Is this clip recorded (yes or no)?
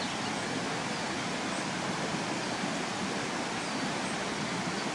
yes